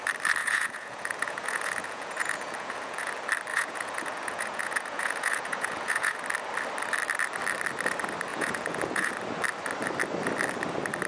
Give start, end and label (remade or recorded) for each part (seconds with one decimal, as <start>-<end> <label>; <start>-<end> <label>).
0.0-0.4 recorded; 0.4-3.1 remade; 3.1-3.5 recorded; 3.5-6.2 remade; 6.2-8.3 recorded; 8.3-9.1 remade; 9.1-11.1 recorded